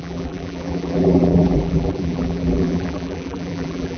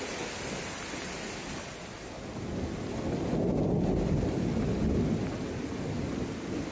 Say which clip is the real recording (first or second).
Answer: second